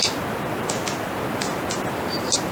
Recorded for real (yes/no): yes